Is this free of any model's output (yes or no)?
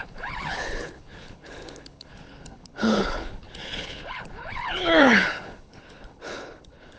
no